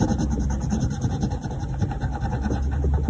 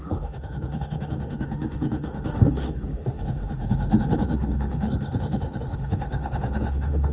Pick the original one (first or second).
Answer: first